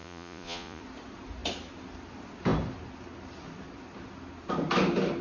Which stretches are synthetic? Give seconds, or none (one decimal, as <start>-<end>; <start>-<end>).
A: 0.0-0.8